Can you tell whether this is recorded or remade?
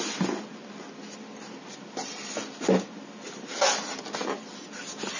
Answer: recorded